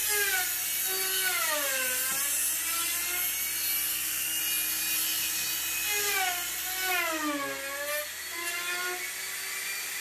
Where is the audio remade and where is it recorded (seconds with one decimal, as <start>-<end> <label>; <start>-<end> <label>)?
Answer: 0.0-3.9 recorded; 3.9-4.4 remade; 4.4-10.0 recorded